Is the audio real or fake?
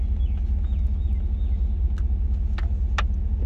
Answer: real